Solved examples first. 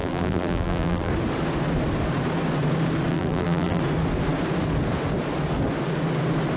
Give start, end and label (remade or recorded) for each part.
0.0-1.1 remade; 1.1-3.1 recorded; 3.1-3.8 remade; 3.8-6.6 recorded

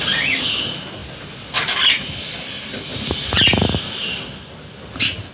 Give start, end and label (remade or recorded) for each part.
0.0-5.3 recorded